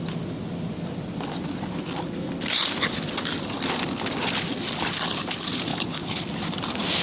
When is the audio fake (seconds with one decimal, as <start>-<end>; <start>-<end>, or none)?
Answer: 5.7-6.2